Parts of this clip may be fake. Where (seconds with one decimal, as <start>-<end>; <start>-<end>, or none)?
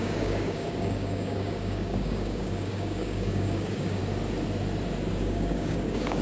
0.0-4.0; 5.1-6.2